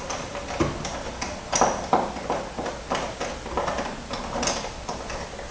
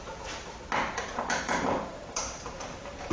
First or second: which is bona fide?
first